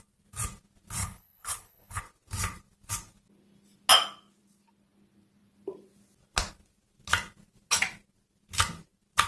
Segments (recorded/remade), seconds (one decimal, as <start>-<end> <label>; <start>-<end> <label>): 0.0-1.0 recorded; 1.0-2.0 remade; 2.0-9.3 recorded